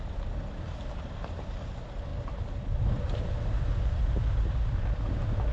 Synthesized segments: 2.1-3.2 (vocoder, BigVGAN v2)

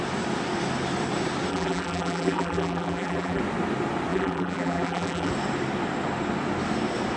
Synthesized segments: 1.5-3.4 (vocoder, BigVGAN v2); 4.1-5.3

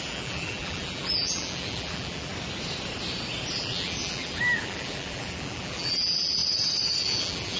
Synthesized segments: 0.0-2.3 (vocoder, BigVGAN v2); 3.5-6.4; 7.0-7.6

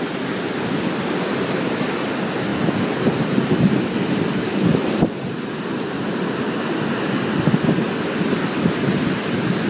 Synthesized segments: none

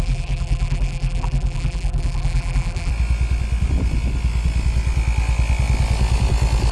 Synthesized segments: 0.0-2.9 (vocoder, BigVGAN v2)

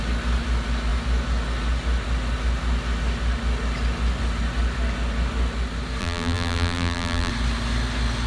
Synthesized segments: 6.0-7.3 (vocoder, BigVGAN v2)

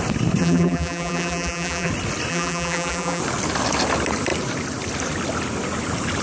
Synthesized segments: 0.4-1.9 (vocoder, BigVGAN v2); 2.3-3.2